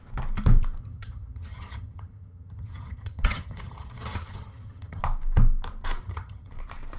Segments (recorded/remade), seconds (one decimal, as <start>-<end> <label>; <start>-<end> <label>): 0.0-0.8 recorded; 0.8-5.0 remade; 5.0-6.0 recorded; 6.0-6.5 remade; 6.5-7.0 recorded